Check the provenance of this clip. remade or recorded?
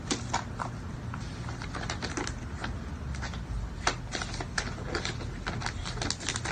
recorded